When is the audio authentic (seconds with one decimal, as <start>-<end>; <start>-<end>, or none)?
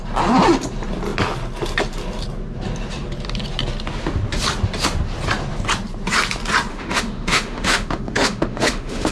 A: 0.0-6.7